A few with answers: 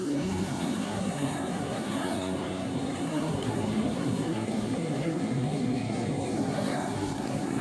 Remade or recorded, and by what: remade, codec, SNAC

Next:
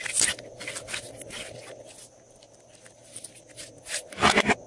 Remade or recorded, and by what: recorded